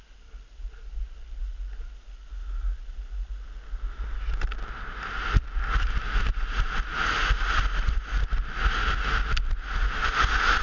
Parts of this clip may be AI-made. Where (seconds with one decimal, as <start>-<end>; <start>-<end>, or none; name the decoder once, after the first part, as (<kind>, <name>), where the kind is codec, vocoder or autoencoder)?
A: none

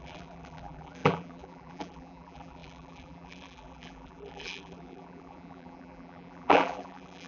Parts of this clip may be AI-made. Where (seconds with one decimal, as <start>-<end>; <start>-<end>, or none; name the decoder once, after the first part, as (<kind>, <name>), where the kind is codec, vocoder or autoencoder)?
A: 0.0-7.3 (vocoder, BigVGAN v2)

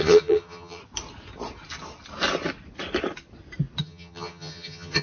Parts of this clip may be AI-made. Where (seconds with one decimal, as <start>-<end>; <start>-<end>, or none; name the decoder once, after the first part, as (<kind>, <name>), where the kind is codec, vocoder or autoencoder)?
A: 0.0-0.8 (vocoder, HiFi-GAN); 3.8-5.0

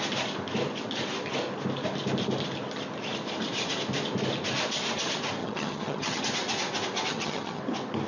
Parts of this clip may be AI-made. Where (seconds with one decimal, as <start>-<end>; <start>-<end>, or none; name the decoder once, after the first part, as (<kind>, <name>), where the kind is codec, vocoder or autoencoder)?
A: 5.4-6.2 (vocoder, HiFi-GAN); 7.1-7.6

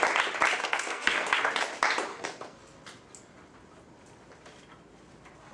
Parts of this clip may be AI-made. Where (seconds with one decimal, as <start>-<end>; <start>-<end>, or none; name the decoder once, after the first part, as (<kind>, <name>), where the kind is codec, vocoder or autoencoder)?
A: 0.6-1.3 (codec, SNAC); 2.1-2.6

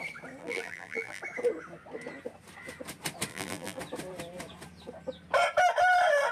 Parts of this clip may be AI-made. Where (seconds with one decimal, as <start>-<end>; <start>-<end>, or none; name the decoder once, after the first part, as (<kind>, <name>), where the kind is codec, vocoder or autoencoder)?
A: 0.4-1.2 (vocoder, BigVGAN v2); 3.3-3.8

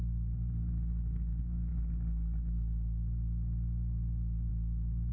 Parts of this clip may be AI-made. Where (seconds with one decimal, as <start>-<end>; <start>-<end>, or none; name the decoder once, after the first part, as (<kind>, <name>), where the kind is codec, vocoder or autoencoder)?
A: none

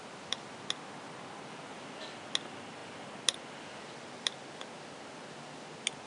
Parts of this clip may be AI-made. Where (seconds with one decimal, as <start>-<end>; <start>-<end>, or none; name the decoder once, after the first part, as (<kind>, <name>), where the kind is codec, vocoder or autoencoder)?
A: none